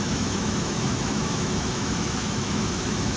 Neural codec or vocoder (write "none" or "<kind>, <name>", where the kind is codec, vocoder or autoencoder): autoencoder, DAC-VAE